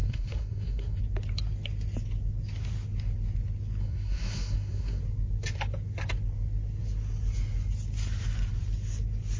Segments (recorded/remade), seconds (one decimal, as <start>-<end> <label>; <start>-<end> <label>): 0.0-1.0 remade; 1.0-3.8 recorded; 3.8-5.0 remade; 5.0-9.4 recorded

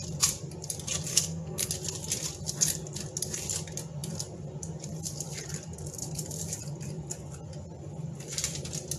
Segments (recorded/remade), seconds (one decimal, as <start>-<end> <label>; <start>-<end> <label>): 0.0-1.1 recorded; 1.1-1.7 remade; 1.7-9.0 recorded

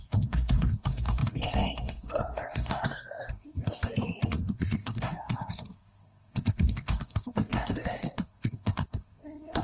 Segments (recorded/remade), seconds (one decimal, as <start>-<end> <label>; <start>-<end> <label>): 0.0-9.6 remade

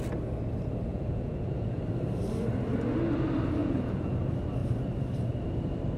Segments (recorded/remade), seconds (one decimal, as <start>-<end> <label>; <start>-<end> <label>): 0.0-0.9 recorded; 0.9-1.8 remade; 1.8-3.6 recorded; 3.6-4.1 remade; 4.1-6.0 recorded

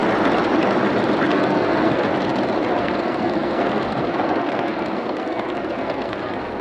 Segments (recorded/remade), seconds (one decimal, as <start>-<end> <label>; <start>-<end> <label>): 0.0-1.3 recorded; 1.3-2.1 remade; 2.1-2.8 recorded; 2.8-6.6 remade